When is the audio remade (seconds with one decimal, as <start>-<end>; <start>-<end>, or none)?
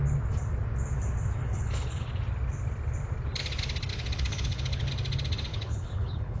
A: 1.4-2.1; 3.9-4.9; 5.5-6.4